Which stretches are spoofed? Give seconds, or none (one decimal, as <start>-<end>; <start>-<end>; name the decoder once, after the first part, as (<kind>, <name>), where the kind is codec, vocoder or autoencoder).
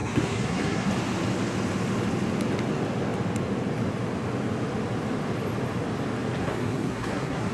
0.0-0.9 (codec, SNAC); 6.4-7.5